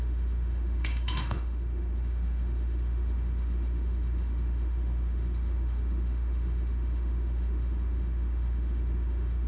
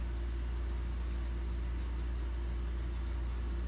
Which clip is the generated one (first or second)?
first